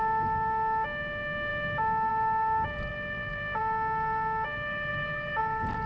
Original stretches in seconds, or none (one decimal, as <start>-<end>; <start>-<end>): 0.0-2.9; 3.6-5.9